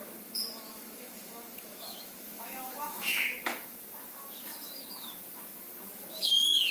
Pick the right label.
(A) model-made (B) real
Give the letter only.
A